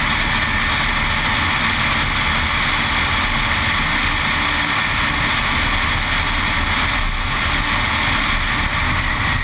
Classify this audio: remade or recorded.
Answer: recorded